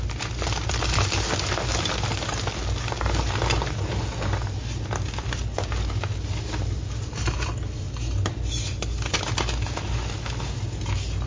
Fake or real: real